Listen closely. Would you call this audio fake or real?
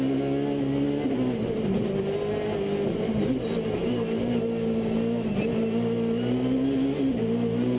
real